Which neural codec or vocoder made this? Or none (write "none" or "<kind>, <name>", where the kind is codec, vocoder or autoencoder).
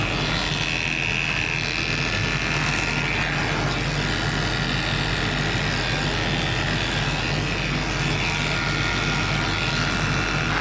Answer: none